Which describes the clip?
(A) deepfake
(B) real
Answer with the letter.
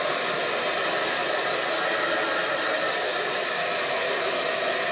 B